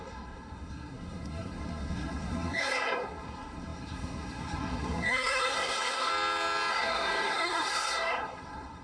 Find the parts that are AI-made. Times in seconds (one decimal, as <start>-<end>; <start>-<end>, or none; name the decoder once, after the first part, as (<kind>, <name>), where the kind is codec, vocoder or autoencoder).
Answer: 0.0-6.1 (codec, SNAC); 6.7-8.8